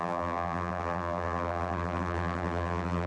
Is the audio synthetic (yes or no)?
yes